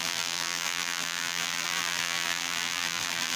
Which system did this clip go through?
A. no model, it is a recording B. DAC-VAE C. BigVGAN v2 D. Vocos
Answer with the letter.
C